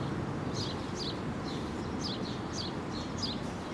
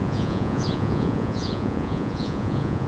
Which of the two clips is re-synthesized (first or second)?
second